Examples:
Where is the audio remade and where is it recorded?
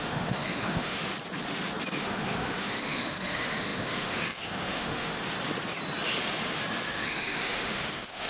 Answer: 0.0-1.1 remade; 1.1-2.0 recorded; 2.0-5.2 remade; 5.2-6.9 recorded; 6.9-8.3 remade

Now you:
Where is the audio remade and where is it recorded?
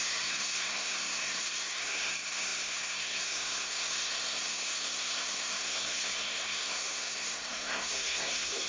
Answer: 0.0-8.7 remade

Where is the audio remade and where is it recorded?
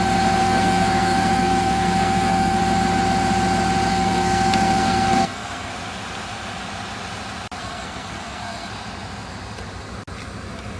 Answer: 0.0-0.4 recorded; 0.4-2.6 remade; 2.6-3.9 recorded; 3.9-5.7 remade; 5.7-7.6 recorded; 7.6-8.7 remade; 8.7-10.8 recorded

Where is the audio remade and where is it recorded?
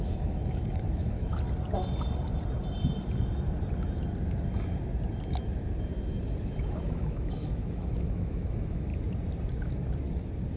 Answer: 0.0-1.3 remade; 1.3-6.5 recorded; 6.5-8.9 remade; 8.9-10.6 recorded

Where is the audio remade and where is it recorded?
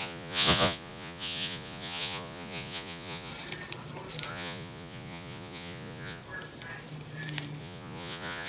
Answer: 0.0-3.3 remade; 3.3-4.3 recorded; 4.3-6.2 remade; 6.2-7.6 recorded; 7.6-8.5 remade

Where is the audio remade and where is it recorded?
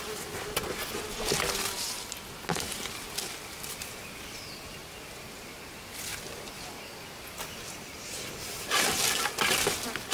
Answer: 0.0-10.1 recorded